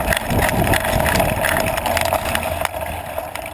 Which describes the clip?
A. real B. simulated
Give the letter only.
A